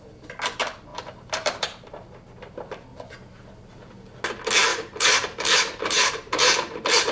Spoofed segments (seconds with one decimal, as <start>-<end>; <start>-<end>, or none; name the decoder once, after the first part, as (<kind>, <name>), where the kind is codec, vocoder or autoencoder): 0.9-1.9 (vocoder, BigVGAN v2); 4.7-7.1